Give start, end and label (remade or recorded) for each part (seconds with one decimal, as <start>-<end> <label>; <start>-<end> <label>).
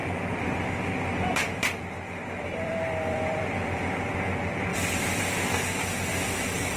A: 0.0-4.1 remade; 4.1-4.7 recorded; 4.7-5.2 remade; 5.2-6.8 recorded